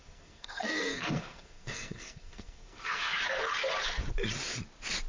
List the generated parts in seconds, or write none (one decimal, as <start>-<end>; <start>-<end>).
0.0-3.1